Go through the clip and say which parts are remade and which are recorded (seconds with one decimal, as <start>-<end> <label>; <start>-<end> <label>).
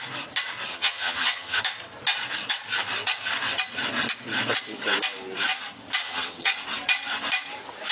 0.0-0.7 recorded; 0.7-1.6 remade; 1.6-6.0 recorded; 6.0-6.5 remade; 6.5-7.9 recorded